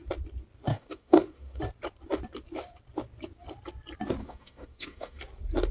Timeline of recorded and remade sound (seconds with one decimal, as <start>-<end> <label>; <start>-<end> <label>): 0.0-0.7 recorded; 0.7-1.6 remade; 1.6-4.2 recorded; 4.2-5.2 remade; 5.2-5.7 recorded